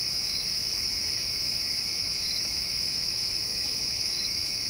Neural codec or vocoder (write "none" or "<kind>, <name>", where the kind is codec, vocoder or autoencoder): autoencoder, DAC-VAE